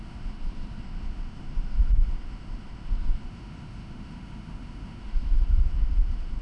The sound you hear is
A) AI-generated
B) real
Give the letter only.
A